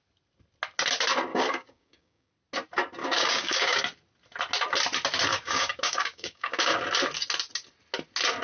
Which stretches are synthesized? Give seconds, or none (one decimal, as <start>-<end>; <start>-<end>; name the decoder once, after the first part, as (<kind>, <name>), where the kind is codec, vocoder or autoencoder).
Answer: 1.3-2.3 (codec, DAC); 3.0-3.8; 5.3-6.8